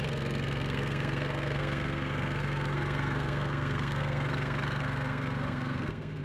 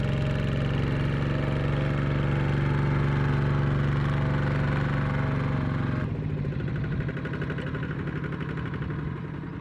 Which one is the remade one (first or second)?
first